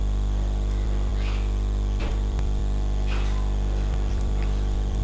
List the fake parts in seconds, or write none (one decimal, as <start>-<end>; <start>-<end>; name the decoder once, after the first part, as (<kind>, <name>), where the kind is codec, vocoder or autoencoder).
0.0-1.1 (vocoder, BigVGAN v2); 2.0-2.6; 4.1-5.0